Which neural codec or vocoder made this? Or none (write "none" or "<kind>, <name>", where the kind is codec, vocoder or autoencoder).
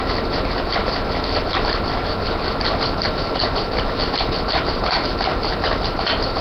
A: vocoder, BigVGAN v2